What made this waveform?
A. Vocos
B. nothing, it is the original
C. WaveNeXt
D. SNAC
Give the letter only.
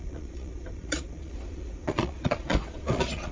A